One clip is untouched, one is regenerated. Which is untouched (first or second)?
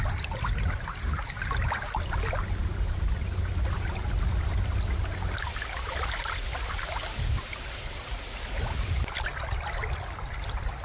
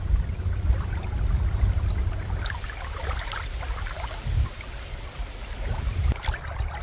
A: first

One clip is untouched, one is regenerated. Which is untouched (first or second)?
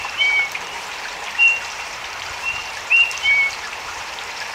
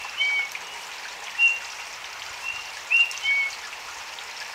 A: second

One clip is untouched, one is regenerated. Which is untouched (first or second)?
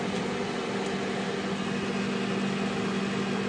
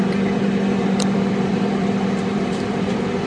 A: first